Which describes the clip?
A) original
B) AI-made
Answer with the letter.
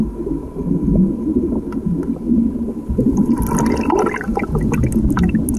A